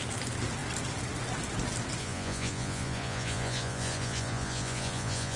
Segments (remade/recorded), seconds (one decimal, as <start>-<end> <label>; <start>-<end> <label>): 0.0-2.0 recorded; 2.0-5.4 remade